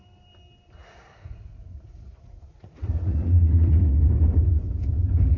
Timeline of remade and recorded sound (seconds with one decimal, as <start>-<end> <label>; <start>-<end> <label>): 0.0-0.8 recorded; 0.8-4.0 remade; 4.0-5.4 recorded